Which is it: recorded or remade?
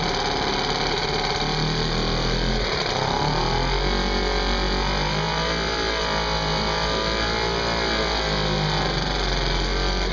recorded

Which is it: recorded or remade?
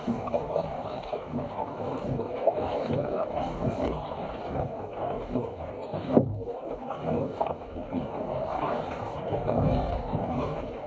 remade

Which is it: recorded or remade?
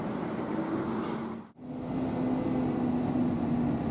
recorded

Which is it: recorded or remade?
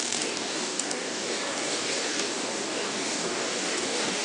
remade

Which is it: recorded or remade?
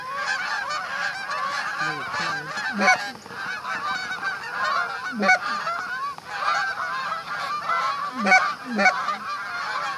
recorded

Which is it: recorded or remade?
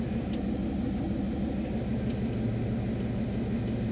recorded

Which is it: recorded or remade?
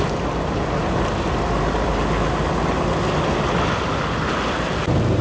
recorded